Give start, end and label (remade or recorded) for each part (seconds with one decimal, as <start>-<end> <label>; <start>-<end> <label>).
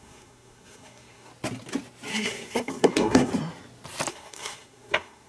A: 0.0-1.3 remade; 1.3-2.1 recorded; 2.1-3.3 remade; 3.3-4.1 recorded; 4.1-5.3 remade